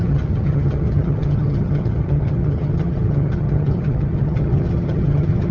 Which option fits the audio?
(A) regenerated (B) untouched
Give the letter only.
A